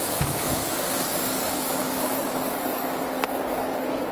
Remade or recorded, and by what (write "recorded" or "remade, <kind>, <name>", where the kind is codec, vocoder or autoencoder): remade, codec, DAC